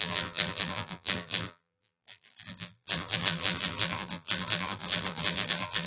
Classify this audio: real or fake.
fake